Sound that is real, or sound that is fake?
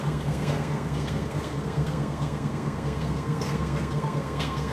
fake